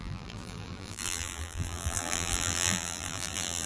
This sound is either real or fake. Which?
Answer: fake